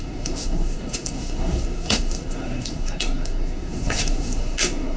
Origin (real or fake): fake